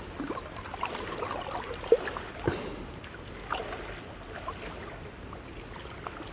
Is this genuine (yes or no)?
yes